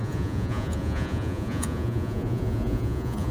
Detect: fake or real fake